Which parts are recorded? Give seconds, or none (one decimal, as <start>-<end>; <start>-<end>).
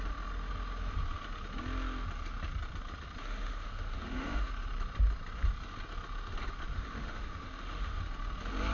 0.0-3.2; 4.5-6.7; 8.0-8.7